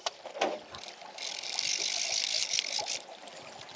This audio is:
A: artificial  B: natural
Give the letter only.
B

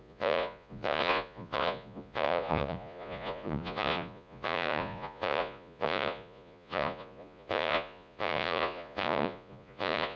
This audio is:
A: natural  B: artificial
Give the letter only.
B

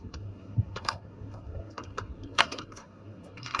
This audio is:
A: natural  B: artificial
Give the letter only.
B